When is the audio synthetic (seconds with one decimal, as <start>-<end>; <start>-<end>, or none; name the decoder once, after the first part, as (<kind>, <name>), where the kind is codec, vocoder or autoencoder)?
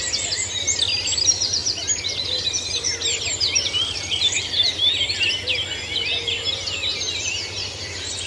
none